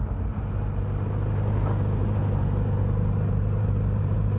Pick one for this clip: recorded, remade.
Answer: recorded